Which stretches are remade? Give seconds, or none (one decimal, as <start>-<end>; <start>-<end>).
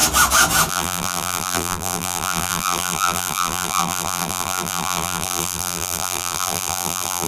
0.7-7.3